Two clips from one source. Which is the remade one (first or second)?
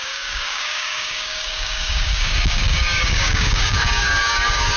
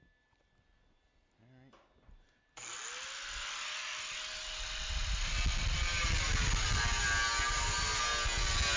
first